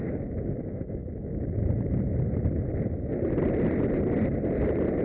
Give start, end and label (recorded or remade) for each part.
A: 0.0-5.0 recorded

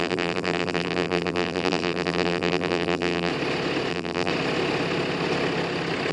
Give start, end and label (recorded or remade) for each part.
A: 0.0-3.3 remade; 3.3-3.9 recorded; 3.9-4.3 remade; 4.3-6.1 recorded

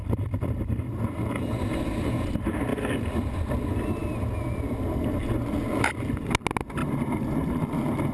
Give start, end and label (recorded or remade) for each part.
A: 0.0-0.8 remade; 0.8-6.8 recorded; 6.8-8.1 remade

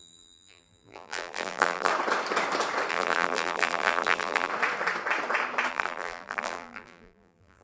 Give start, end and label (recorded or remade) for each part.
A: 0.0-1.9 remade; 1.9-2.9 recorded; 2.9-4.5 remade; 4.5-5.7 recorded; 5.7-7.6 remade

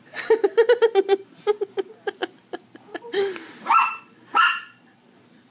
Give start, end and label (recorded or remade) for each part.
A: 0.0-2.2 remade; 2.2-3.5 recorded; 3.5-5.5 remade